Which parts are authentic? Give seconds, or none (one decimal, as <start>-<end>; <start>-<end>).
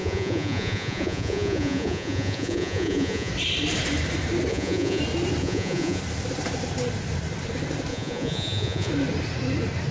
3.3-4.5; 5.0-5.4; 6.0-7.9; 8.9-9.9